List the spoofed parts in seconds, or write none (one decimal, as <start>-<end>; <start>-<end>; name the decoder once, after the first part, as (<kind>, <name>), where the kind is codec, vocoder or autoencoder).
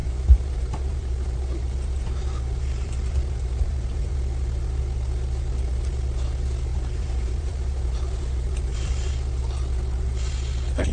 0.0-4.2 (vocoder, BigVGAN v2); 6.7-9.1